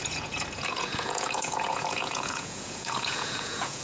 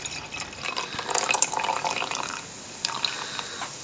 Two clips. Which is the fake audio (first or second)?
first